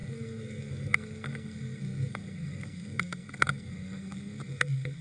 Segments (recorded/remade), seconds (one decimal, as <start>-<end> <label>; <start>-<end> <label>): 0.0-5.0 remade

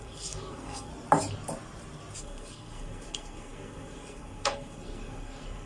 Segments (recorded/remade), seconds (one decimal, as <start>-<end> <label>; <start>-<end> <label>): 0.0-0.9 remade; 0.9-2.2 recorded; 2.2-5.7 remade

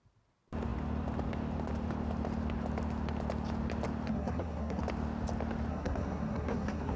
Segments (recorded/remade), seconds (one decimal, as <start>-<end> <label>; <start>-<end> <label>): 0.0-4.1 recorded; 4.1-4.8 remade; 4.8-5.7 recorded; 5.7-7.0 remade

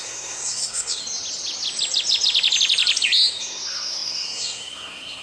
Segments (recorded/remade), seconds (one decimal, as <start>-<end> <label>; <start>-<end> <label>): 0.0-1.0 remade; 1.0-3.4 recorded; 3.4-5.2 remade

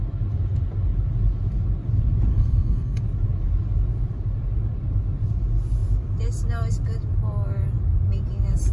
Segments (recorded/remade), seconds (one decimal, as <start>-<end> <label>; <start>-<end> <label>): 0.0-2.3 recorded; 2.3-3.0 remade; 3.0-8.7 recorded

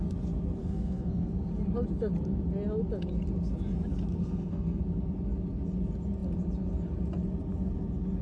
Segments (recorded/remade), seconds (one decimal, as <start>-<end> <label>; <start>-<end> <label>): 0.0-0.6 recorded; 0.6-1.3 remade; 1.3-4.2 recorded; 4.2-4.8 remade; 4.8-8.2 recorded